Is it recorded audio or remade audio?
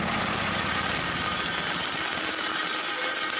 recorded